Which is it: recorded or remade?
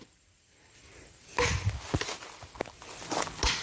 recorded